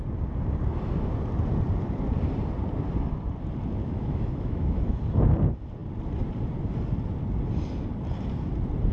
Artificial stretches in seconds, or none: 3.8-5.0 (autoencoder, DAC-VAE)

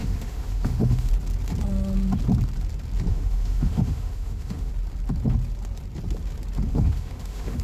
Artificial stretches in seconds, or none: 0.0-1.1 (autoencoder, DAC-VAE); 3.1-4.7; 6.7-7.6

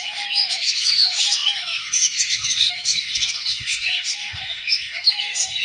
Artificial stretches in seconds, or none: 0.0-5.6 (autoencoder, DAC-VAE)

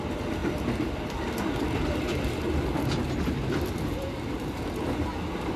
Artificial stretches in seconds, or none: none

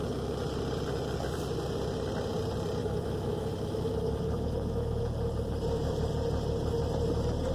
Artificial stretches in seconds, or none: 2.8-5.0 (autoencoder, DAC-VAE)